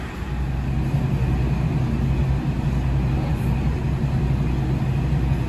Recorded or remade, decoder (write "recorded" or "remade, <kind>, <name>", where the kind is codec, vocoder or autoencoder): recorded